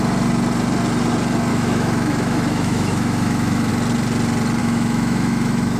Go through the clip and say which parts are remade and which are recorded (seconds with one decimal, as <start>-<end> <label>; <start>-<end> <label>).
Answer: 0.0-1.5 recorded; 1.5-3.7 remade; 3.7-4.6 recorded; 4.6-5.8 remade